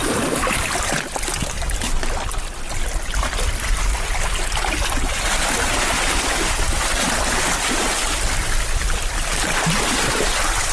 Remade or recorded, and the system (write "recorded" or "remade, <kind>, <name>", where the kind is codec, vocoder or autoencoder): recorded